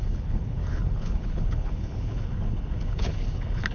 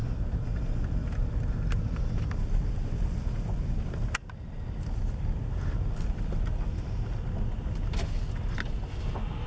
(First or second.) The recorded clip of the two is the second